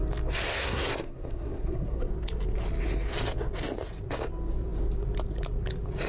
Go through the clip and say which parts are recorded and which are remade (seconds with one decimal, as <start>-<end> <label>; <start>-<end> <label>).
0.0-0.5 recorded; 0.5-2.1 remade; 2.1-6.1 recorded